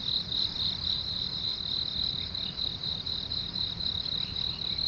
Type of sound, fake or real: real